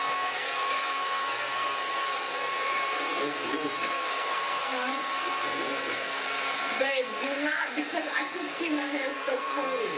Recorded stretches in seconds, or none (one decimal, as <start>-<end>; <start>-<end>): none